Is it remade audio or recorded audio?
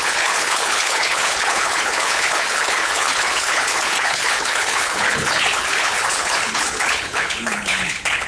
remade